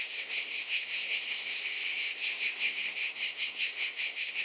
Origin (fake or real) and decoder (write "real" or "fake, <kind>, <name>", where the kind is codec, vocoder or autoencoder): fake, codec, SNAC